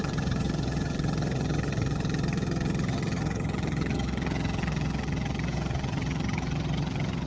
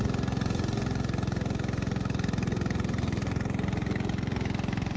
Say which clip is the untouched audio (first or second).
second